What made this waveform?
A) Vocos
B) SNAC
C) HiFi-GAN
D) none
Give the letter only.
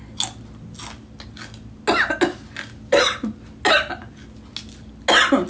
D